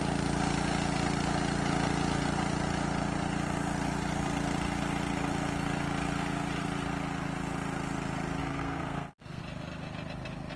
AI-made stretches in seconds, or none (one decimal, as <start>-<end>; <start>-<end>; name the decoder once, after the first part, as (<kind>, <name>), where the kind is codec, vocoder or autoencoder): 8.4-9.4 (codec, SNAC)